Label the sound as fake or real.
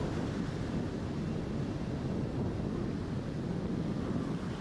real